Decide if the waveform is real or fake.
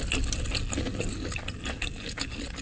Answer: real